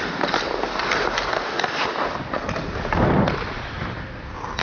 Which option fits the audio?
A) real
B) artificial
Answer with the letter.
A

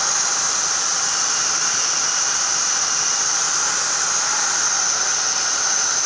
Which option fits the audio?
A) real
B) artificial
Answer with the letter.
A